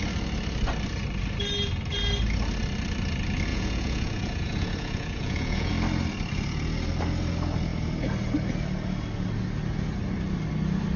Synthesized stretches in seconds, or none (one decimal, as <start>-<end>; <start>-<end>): 3.5-5.7